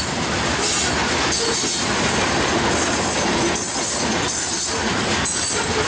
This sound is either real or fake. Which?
real